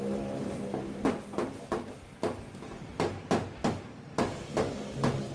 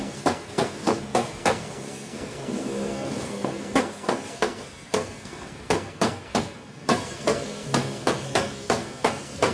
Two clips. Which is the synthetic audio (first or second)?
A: second